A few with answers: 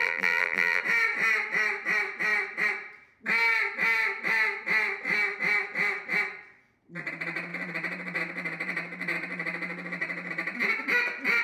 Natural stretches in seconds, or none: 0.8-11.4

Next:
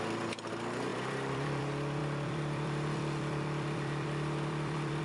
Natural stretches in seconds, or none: 0.0-0.9; 1.6-2.0

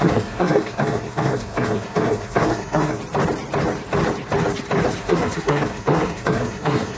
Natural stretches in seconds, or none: 3.0-5.0

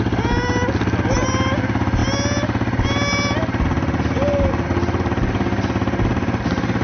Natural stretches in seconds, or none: 0.0-6.8

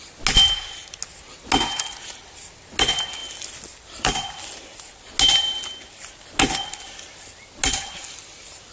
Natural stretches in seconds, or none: 0.0-3.2; 4.6-8.7

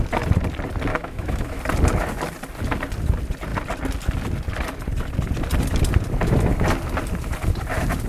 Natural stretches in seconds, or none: 0.0-0.9; 1.6-8.1

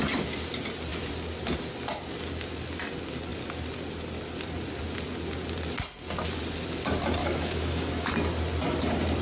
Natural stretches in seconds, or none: 0.0-7.2; 8.1-9.2